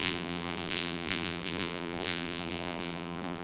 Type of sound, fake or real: fake